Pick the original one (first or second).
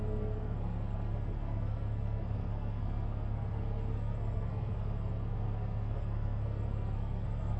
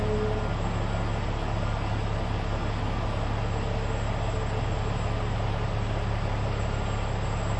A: second